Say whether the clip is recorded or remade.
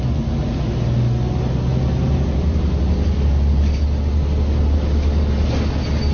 recorded